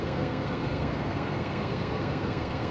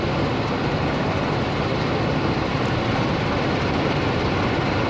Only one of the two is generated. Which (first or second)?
first